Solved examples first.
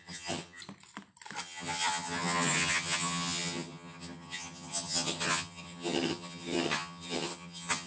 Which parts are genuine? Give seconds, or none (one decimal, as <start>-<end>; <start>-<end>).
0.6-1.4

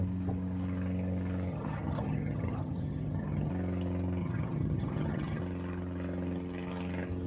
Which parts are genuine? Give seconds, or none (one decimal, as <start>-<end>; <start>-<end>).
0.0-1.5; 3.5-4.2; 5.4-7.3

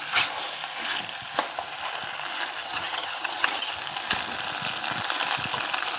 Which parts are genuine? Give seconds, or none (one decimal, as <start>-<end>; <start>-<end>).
0.0-2.6; 3.7-6.0

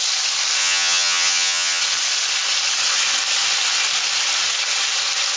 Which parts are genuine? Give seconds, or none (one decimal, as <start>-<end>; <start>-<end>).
0.0-0.6; 1.8-5.4

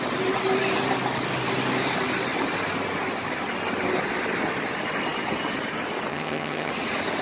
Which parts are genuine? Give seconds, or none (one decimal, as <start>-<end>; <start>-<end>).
0.0-6.1; 6.7-7.2

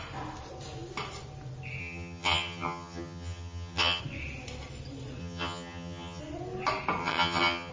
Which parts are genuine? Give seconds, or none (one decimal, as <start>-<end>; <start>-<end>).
0.0-1.8; 4.0-5.2; 6.2-7.0